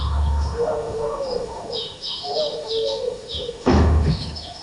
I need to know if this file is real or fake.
fake